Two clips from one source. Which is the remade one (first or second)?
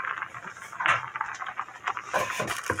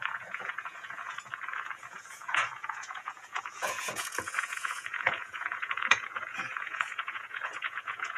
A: second